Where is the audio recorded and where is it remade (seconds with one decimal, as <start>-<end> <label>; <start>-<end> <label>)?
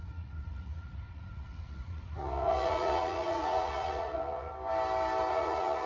0.0-4.5 remade; 4.5-5.3 recorded; 5.3-5.9 remade